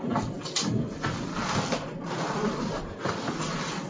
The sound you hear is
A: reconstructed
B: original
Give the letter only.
B